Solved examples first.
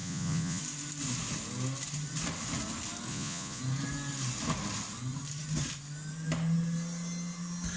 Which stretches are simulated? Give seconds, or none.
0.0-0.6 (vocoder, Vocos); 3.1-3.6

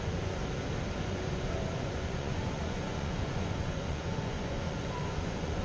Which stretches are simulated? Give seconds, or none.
0.0-0.4 (vocoder, Vocos); 1.0-5.6

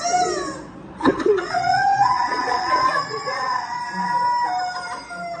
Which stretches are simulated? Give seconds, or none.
1.1-3.8 (vocoder, Vocos)

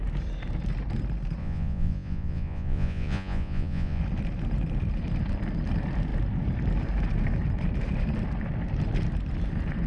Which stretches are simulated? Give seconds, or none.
1.4-4.0 (vocoder, Vocos)

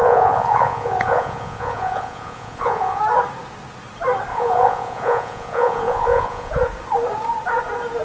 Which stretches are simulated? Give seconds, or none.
0.0-3.0 (vocoder, Vocos); 4.3-6.5

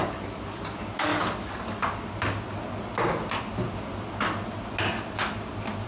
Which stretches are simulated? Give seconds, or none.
none

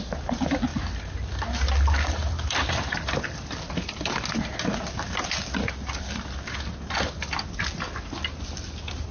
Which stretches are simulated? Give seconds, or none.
none